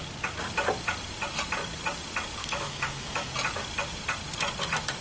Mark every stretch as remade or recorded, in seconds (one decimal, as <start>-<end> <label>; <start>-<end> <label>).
0.0-2.4 recorded; 2.4-3.3 remade; 3.3-5.0 recorded